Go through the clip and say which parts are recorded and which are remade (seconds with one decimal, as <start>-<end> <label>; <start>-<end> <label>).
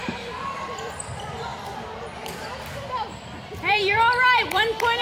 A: 0.0-1.5 remade; 1.5-2.8 recorded; 2.8-5.0 remade